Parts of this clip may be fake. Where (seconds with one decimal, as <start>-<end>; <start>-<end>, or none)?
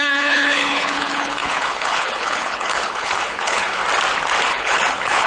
0.0-3.8; 4.5-5.3